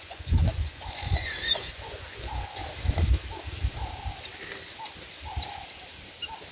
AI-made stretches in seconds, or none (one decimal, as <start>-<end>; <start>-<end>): 0.0-2.6